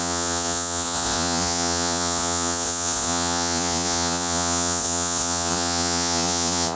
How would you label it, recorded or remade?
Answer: remade